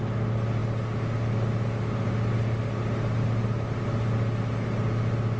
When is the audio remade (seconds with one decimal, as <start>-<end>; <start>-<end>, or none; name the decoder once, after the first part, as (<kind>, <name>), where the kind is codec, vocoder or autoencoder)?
none